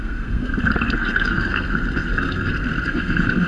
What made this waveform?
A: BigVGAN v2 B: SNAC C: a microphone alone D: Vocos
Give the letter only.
B